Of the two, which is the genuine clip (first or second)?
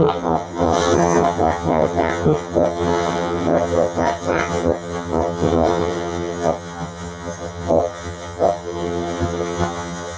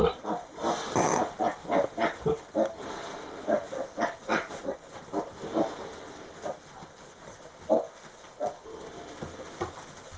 second